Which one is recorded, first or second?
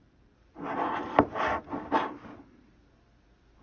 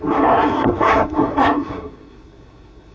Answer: first